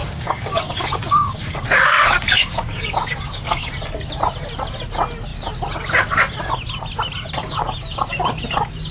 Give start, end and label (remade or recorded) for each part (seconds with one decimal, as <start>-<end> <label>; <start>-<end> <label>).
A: 0.0-3.7 remade; 3.7-8.9 recorded